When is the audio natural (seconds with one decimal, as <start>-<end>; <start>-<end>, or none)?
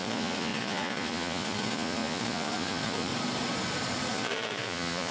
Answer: 3.1-4.1